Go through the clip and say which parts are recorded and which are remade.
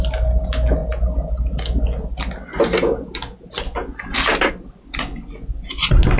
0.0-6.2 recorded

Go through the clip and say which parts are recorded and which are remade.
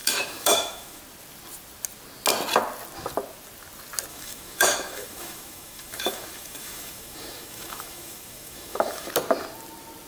0.0-1.0 remade; 1.0-4.1 recorded; 4.1-9.1 remade; 9.1-10.1 recorded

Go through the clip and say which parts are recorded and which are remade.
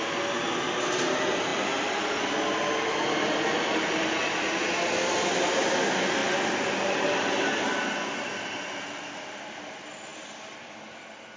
0.0-11.4 recorded